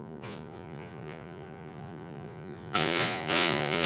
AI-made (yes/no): yes